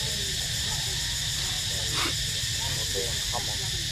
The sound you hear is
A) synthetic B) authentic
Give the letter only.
B